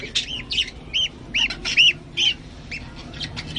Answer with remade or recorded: recorded